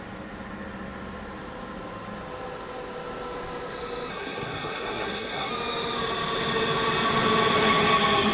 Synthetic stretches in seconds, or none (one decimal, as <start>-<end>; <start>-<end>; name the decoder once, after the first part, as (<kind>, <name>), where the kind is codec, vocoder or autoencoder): 4.1-5.5 (codec, SNAC)